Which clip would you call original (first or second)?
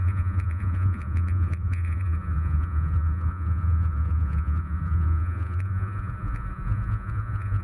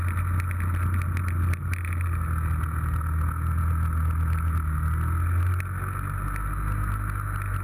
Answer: second